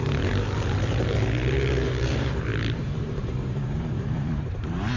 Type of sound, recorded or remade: remade